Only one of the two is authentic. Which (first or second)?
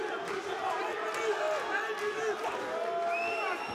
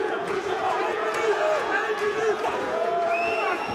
first